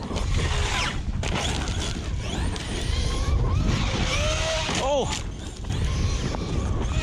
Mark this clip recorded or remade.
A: recorded